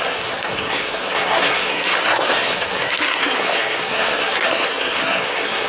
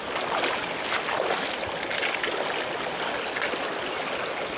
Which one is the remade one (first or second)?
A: first